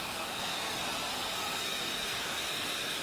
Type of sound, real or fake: fake